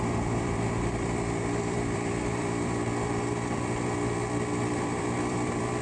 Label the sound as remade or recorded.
remade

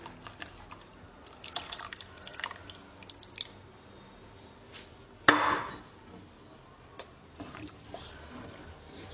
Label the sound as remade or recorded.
recorded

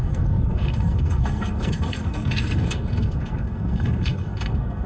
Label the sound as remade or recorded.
remade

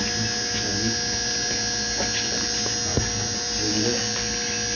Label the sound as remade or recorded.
recorded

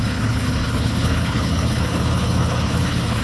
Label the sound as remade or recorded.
remade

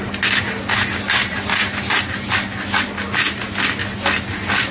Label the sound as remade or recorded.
recorded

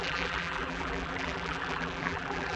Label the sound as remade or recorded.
remade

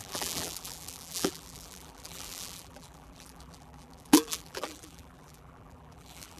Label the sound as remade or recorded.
remade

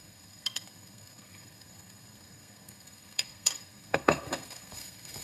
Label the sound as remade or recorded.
remade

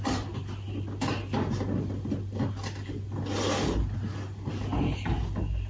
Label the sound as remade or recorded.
recorded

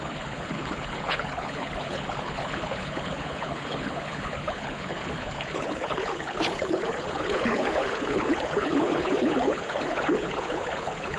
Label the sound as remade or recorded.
remade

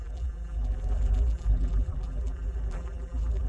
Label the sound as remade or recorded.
remade